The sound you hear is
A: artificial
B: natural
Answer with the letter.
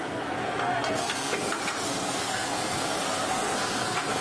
A